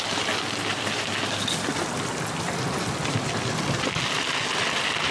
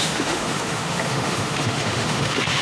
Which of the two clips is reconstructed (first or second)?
second